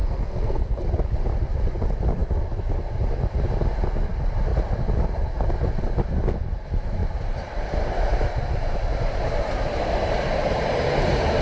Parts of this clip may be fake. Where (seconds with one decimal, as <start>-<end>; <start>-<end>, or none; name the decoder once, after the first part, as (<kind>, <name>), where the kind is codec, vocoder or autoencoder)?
0.0-0.8 (codec, SNAC)